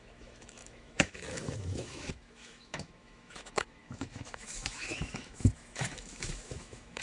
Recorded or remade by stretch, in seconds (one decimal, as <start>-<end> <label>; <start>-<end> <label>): 0.0-7.0 remade